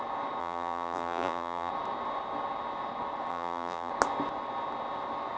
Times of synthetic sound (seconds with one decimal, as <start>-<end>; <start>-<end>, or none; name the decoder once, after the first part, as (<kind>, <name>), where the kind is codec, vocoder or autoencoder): 0.4-1.7 (vocoder, BigVGAN v2); 3.3-3.9